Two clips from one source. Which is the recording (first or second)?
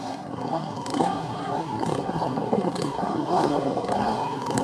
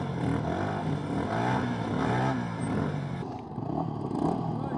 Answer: second